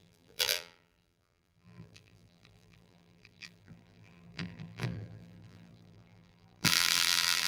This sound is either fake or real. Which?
fake